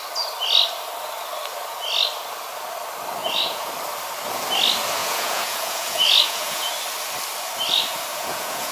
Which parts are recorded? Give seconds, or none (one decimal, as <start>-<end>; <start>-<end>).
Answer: 0.0-3.2; 3.7-5.0; 6.7-8.1